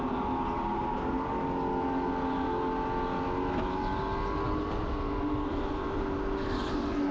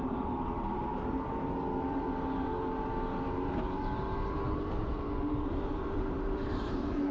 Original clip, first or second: first